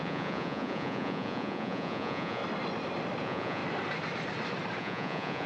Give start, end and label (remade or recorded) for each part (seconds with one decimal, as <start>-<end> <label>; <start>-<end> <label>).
0.0-2.4 remade; 2.4-3.2 recorded; 3.2-3.6 remade; 3.6-4.8 recorded; 4.8-5.5 remade